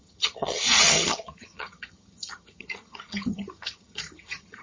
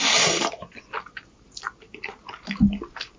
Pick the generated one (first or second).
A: first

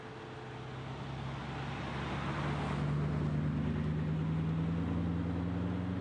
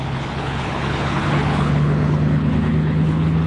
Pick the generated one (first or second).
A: second